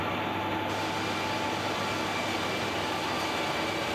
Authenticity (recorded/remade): recorded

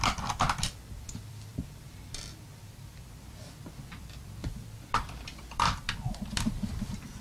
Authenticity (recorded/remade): remade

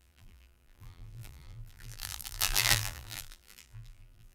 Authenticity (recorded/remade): remade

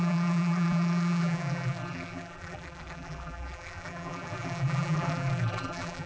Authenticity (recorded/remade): remade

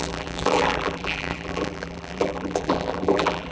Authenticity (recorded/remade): remade